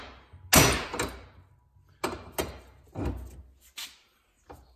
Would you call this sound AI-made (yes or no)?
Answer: no